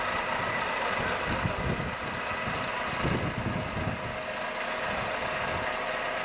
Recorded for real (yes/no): yes